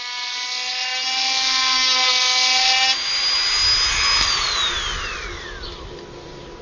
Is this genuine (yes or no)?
yes